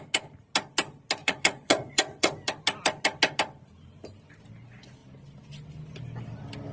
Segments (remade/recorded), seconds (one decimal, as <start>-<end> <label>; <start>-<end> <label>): 0.0-1.2 recorded; 1.2-2.3 remade; 2.3-6.7 recorded